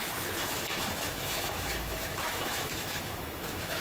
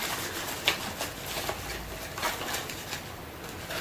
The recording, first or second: second